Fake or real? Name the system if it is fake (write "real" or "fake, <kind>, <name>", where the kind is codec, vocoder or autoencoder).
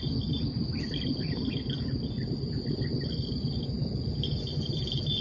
real